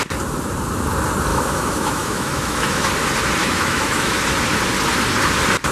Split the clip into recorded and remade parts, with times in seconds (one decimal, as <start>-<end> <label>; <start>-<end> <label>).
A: 0.0-1.3 recorded; 1.3-2.9 remade; 2.9-3.4 recorded; 3.4-4.2 remade; 4.2-5.7 recorded